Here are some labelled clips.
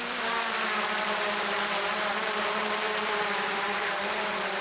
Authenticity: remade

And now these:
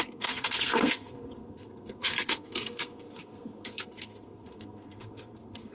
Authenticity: remade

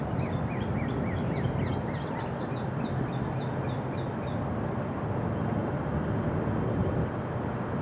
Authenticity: recorded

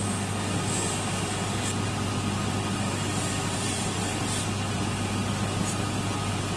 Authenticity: recorded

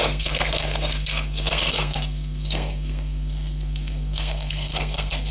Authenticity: remade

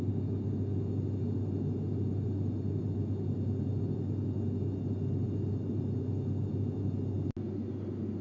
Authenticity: recorded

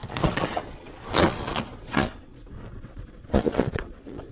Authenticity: remade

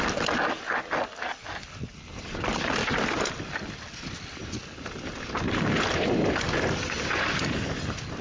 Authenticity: recorded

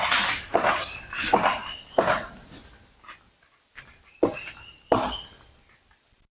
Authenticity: recorded